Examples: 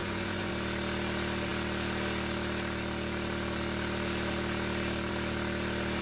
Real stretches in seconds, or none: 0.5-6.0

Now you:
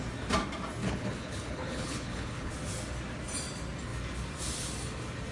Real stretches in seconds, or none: 0.0-0.8; 2.5-5.3

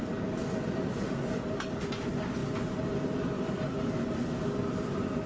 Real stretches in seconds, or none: 0.0-5.3

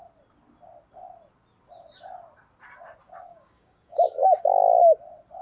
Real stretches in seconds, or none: 0.0-3.3; 4.4-5.4

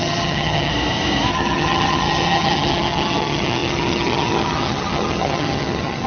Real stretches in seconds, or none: 0.7-1.3

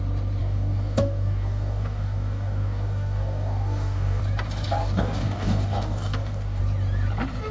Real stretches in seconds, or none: 0.0-0.4; 4.2-4.8; 6.6-7.5

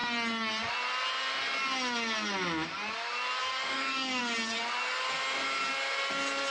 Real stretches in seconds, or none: 0.0-3.4; 4.2-6.5